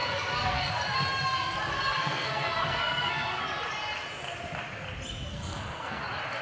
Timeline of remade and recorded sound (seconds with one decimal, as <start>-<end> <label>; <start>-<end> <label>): 0.0-0.7 remade; 0.7-2.0 recorded; 2.0-3.4 remade; 3.4-5.3 recorded; 5.3-6.0 remade; 6.0-6.4 recorded

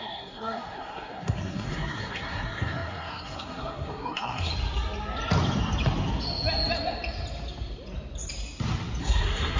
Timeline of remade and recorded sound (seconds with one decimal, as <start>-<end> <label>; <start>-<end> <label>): 0.0-4.5 remade; 4.5-9.0 recorded; 9.0-9.6 remade

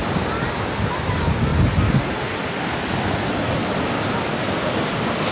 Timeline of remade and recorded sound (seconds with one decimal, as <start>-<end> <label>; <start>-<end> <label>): 0.0-5.3 recorded

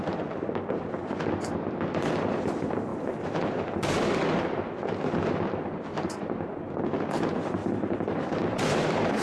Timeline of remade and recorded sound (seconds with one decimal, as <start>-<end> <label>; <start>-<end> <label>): 0.0-1.0 remade; 1.0-5.9 recorded; 5.9-6.5 remade; 6.5-7.6 recorded; 7.6-9.2 remade

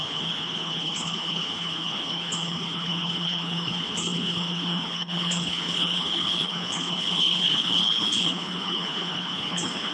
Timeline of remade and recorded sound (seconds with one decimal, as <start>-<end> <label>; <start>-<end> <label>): 0.0-9.9 remade

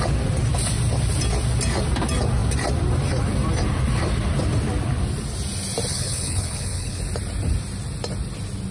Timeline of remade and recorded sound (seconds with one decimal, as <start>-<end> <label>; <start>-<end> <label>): 0.0-5.9 recorded; 5.9-7.0 remade; 7.0-8.7 recorded

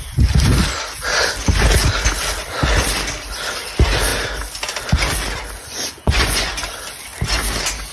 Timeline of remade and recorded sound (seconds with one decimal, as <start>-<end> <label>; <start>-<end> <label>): 0.0-5.6 recorded; 5.6-6.5 remade; 6.5-7.9 recorded